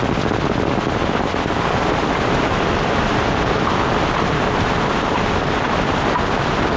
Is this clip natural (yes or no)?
yes